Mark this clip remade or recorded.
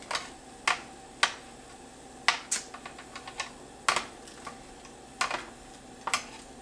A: recorded